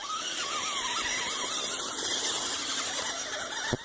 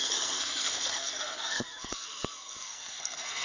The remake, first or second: second